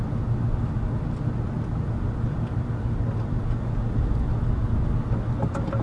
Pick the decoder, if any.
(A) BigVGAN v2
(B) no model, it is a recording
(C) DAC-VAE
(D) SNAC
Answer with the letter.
B